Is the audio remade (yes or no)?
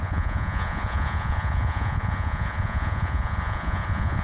yes